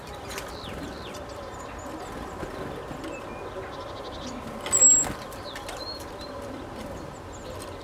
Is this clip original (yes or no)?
yes